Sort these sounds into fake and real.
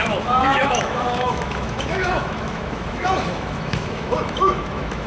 fake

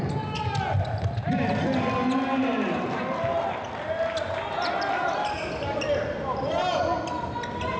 real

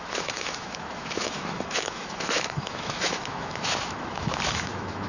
fake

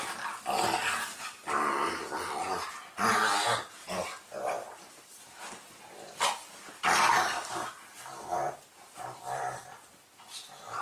real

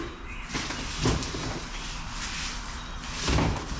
real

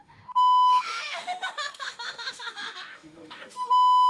fake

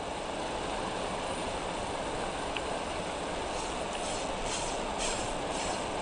real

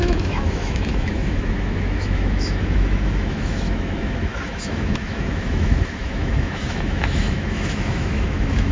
fake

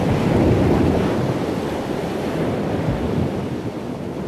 real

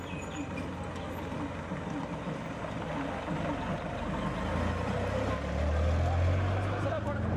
real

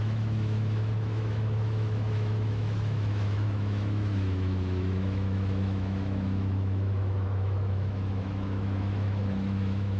fake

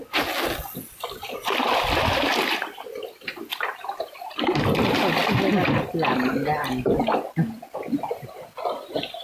real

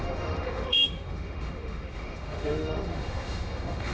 fake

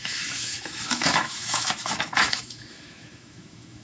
fake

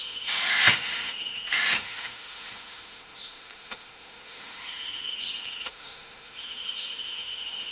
fake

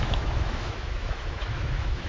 fake